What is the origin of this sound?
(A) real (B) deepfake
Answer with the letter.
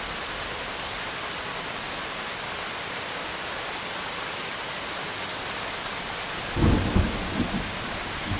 A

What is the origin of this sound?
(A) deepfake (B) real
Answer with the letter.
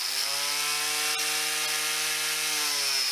B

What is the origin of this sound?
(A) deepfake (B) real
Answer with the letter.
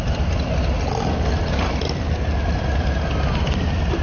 B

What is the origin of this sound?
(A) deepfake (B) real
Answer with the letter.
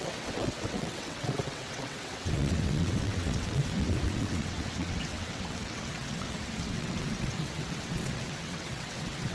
A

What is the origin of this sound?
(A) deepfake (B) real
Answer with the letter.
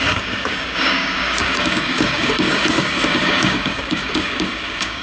A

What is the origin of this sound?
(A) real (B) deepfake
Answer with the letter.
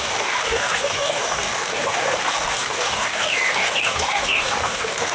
B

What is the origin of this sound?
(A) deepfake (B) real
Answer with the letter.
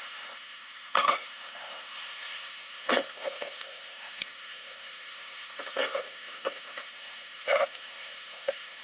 A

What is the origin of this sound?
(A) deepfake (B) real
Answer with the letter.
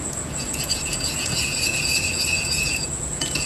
A